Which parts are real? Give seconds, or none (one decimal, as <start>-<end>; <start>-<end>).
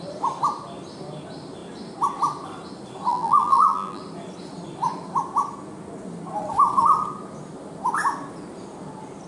0.0-3.1; 4.0-9.3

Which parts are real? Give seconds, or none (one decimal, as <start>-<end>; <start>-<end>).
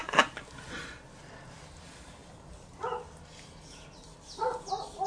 0.0-5.1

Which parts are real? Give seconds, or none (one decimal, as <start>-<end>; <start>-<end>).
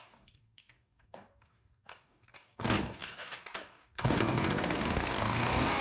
none